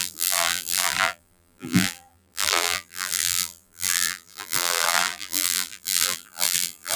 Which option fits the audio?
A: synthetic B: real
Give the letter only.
A